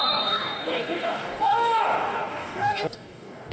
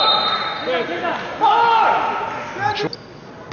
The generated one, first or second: first